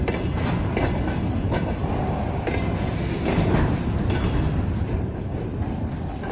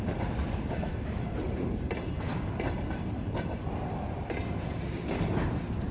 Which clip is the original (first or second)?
first